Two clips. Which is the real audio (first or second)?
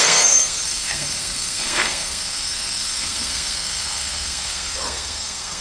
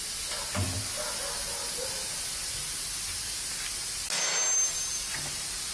second